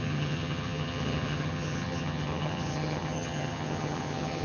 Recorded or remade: remade